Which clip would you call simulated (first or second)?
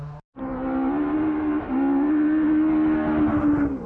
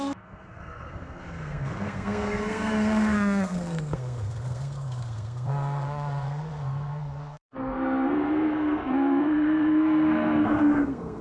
second